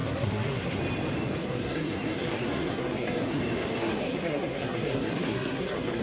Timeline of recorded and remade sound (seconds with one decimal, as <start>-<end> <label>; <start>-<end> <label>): 0.0-0.8 remade; 0.8-1.4 recorded; 1.4-3.4 remade; 3.4-3.8 recorded; 3.8-6.0 remade